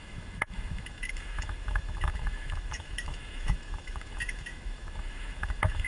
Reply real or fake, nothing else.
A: fake